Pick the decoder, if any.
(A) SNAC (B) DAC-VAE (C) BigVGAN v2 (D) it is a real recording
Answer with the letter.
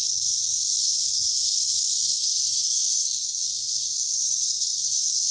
A